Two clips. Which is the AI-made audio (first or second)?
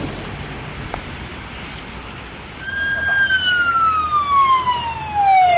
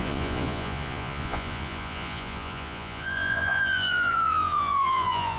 second